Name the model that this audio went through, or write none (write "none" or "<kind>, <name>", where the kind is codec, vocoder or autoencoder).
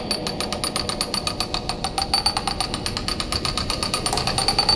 none